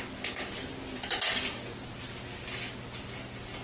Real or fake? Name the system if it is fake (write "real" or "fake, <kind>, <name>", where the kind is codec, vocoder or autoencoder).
real